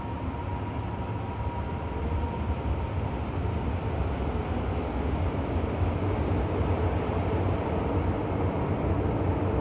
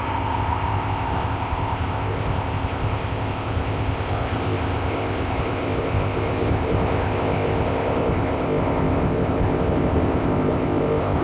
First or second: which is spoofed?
second